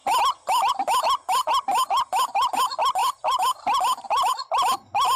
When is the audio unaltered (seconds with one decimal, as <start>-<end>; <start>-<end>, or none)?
0.0-3.0; 4.3-5.2